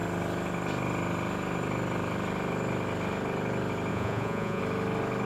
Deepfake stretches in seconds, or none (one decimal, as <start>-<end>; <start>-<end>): 3.9-4.6